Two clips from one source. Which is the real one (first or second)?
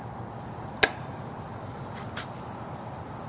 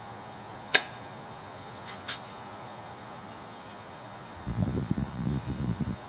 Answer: first